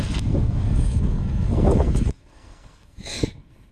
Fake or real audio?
fake